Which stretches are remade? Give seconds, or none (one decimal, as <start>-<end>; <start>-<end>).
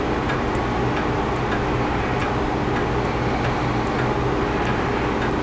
none